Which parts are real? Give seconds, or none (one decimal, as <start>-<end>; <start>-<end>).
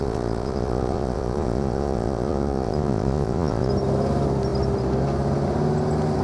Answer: 3.7-6.2